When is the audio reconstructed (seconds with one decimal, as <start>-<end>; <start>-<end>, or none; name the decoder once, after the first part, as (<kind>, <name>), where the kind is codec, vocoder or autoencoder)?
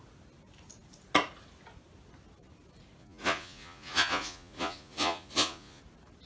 3.0-5.8 (vocoder, Vocos)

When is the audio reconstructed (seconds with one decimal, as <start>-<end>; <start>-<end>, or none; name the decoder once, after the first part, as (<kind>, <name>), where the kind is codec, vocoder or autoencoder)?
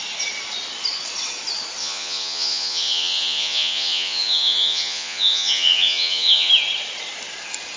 1.8-6.5 (vocoder, Vocos)